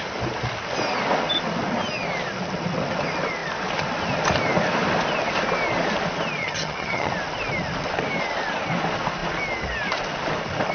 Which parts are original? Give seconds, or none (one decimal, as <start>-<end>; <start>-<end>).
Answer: 0.0-6.4; 7.1-10.7